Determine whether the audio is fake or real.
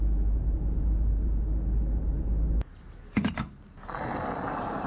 real